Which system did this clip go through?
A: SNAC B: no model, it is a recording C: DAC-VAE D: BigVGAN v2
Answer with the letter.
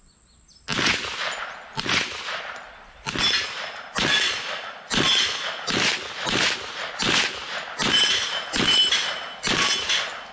B